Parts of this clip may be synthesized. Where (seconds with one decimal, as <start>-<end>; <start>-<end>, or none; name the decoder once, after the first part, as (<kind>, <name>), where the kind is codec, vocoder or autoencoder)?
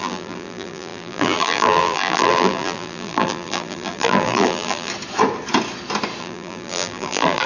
0.0-4.9 (vocoder, BigVGAN v2); 6.2-7.5